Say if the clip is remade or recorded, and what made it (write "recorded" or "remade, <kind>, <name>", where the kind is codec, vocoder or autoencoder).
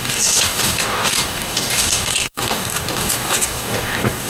remade, codec, DAC